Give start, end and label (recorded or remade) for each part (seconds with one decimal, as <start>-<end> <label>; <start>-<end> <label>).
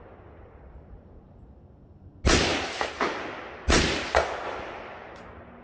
0.0-5.6 recorded